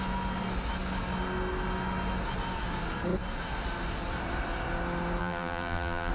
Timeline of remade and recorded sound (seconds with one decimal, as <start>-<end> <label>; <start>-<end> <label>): 0.0-5.2 recorded; 5.2-6.1 remade

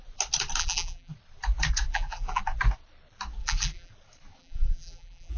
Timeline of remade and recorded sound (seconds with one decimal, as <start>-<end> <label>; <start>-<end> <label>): 0.0-0.6 recorded; 0.6-1.1 remade; 1.1-1.9 recorded; 1.9-2.4 remade; 2.4-3.4 recorded; 3.4-3.9 remade; 3.9-4.4 recorded; 4.4-5.4 remade

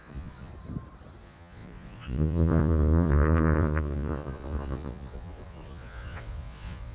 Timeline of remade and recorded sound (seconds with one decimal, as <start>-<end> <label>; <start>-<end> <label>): 0.0-0.5 remade; 0.5-1.2 recorded; 1.2-6.9 remade

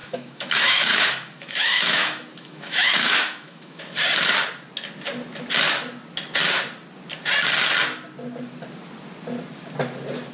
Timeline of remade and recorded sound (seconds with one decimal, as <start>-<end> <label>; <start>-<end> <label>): 0.0-3.8 remade; 3.8-10.3 recorded